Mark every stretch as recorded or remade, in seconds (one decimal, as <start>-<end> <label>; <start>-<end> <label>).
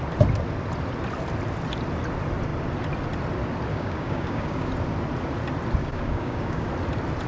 0.0-3.7 recorded; 3.7-4.7 remade; 4.7-5.8 recorded; 5.8-6.7 remade; 6.7-7.3 recorded